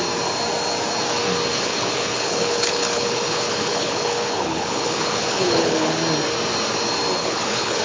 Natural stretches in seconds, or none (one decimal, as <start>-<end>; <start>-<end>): 0.0-1.5; 5.9-7.2